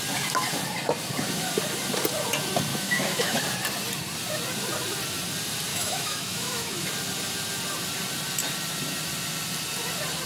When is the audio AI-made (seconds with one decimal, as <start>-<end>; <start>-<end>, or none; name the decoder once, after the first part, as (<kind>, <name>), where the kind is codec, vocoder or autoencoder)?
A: 2.7-3.4 (autoencoder, DAC-VAE); 5.7-6.9